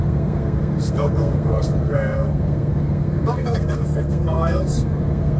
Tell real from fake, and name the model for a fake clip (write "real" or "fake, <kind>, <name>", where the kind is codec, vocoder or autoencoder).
fake, codec, SNAC